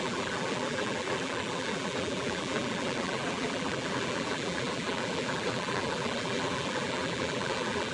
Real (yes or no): no